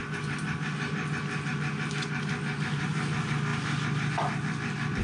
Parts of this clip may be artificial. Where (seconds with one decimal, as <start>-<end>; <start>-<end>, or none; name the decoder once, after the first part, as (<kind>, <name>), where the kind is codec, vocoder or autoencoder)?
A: none